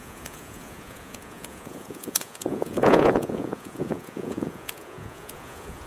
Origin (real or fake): fake